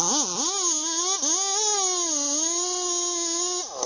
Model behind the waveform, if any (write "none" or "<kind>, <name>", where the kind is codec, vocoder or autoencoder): none